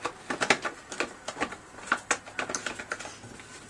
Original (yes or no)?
yes